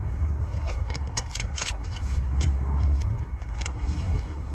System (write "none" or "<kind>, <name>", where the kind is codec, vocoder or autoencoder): codec, SNAC